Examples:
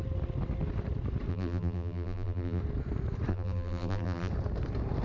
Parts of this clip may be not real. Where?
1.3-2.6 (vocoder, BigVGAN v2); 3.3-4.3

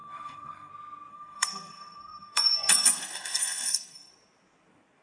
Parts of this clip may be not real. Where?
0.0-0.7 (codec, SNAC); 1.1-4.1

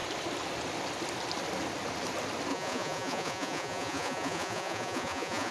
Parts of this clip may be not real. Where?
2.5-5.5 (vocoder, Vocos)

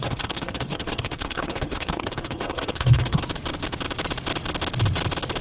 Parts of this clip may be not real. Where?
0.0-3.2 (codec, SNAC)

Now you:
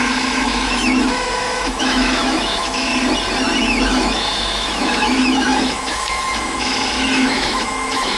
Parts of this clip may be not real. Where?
0.0-2.9 (autoencoder, DAC-VAE); 3.6-8.2

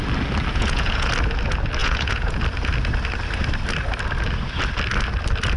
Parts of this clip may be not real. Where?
0.5-1.1 (vocoder, Vocos); 1.8-2.4

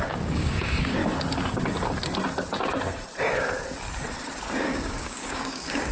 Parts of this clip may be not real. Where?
0.0-1.0 (codec, DAC); 4.5-5.9